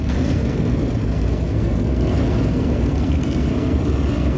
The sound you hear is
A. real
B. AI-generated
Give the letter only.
B